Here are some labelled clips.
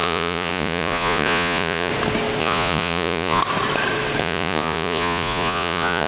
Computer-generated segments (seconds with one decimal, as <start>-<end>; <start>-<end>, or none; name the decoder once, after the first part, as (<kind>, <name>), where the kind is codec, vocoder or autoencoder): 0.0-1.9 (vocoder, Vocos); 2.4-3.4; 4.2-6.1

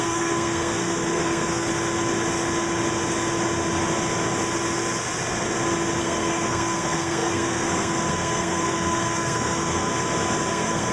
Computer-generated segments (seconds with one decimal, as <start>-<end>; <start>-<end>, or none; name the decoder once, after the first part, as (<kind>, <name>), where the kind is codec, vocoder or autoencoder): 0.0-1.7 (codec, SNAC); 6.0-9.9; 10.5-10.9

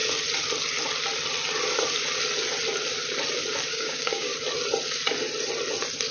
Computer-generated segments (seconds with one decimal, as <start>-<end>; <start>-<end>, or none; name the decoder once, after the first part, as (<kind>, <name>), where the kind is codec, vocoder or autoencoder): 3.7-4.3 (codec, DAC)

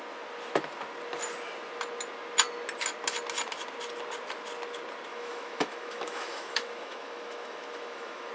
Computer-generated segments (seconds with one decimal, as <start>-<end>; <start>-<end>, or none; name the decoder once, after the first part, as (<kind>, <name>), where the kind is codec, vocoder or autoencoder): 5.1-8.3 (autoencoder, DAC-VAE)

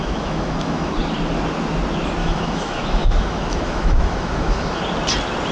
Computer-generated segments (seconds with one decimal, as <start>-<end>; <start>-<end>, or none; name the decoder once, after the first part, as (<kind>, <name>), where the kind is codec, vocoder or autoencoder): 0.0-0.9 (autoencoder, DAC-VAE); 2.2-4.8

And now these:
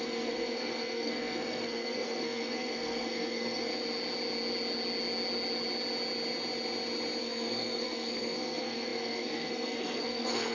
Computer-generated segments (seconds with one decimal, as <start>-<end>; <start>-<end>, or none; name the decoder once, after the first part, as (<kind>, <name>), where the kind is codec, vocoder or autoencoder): 0.0-3.7 (codec, SNAC); 7.2-10.5